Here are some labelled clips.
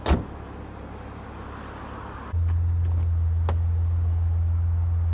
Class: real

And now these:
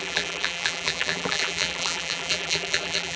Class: fake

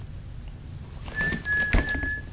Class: real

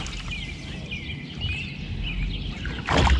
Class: real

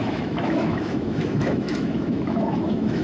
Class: fake